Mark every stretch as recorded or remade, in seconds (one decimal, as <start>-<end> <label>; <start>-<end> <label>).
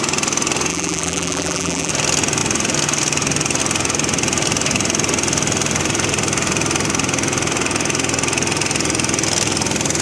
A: 0.0-0.7 recorded; 0.7-1.9 remade; 1.9-10.0 recorded